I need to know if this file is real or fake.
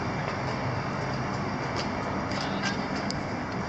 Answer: real